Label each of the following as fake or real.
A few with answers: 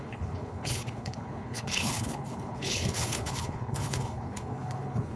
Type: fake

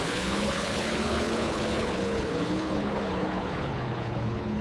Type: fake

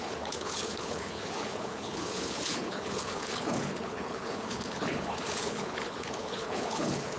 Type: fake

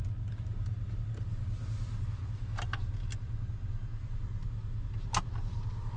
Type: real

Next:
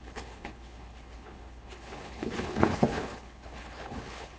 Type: fake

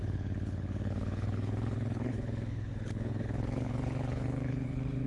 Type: fake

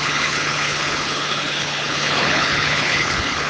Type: fake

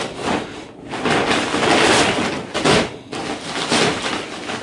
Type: real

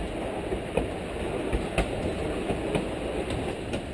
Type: real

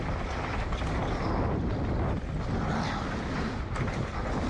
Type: real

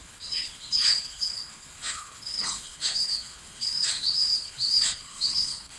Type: fake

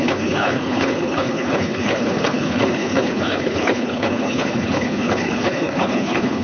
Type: fake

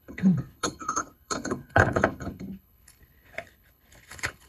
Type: fake